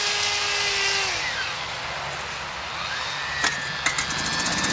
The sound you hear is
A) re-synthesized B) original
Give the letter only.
B